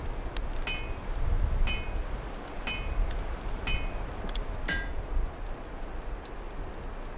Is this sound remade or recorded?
recorded